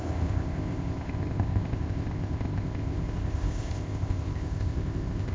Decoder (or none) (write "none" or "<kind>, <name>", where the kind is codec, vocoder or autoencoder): codec, ZipCodec